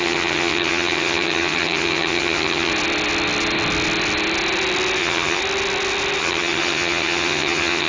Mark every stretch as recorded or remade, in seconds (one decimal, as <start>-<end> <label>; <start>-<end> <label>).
0.0-2.7 remade; 2.7-5.0 recorded; 5.0-5.4 remade; 5.4-6.2 recorded; 6.2-7.9 remade